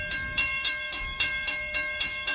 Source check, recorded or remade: remade